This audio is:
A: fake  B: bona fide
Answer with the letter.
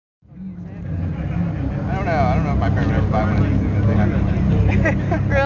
B